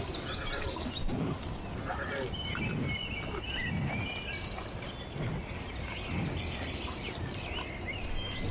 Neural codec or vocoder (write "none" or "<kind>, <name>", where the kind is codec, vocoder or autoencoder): none